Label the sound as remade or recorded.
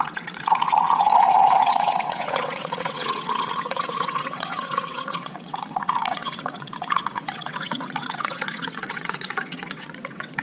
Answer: remade